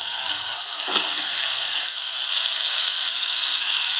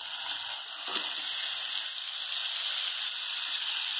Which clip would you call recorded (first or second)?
second